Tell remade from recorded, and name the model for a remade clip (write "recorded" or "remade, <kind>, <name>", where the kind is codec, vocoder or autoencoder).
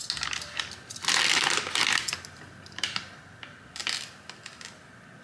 recorded